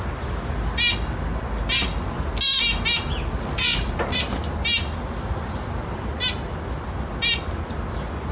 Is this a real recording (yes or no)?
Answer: yes